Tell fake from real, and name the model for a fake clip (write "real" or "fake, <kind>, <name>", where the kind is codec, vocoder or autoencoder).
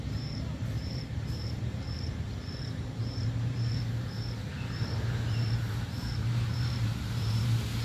fake, vocoder, BigVGAN v2